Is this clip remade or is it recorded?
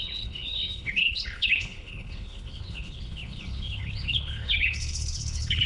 remade